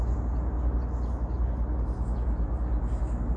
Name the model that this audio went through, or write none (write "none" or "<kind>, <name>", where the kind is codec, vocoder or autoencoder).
none